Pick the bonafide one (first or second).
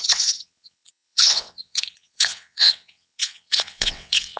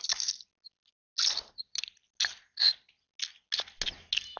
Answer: second